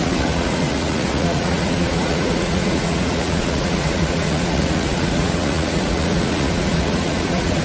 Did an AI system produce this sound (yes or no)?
yes